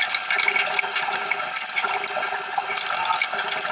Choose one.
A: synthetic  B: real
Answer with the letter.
B